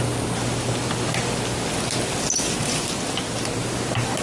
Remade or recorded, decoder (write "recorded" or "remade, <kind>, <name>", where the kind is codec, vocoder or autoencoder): recorded